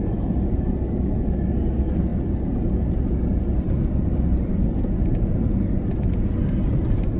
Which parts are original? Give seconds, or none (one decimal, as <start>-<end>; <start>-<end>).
0.0-7.2